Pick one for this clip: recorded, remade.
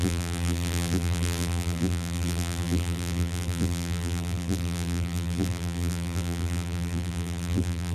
remade